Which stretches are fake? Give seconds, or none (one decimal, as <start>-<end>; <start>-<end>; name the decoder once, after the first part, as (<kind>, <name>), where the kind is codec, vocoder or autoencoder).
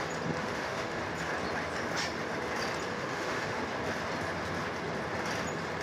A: 0.4-1.0 (autoencoder, DAC-VAE); 2.9-3.6